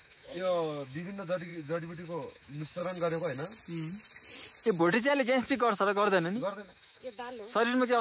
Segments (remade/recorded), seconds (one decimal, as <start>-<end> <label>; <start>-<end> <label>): 0.0-2.8 remade; 2.8-4.8 recorded; 4.8-8.0 remade